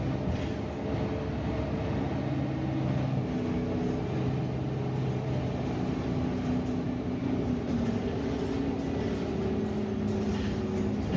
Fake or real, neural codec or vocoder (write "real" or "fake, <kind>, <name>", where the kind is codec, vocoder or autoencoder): real